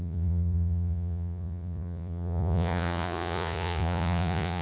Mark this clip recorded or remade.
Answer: remade